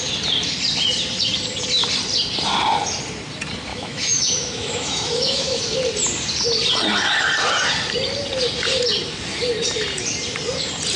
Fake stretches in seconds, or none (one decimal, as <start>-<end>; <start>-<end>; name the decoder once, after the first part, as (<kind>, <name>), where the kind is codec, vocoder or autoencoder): 3.7-5.6 (autoencoder, DAC-VAE)